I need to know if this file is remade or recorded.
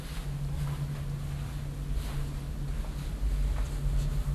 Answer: recorded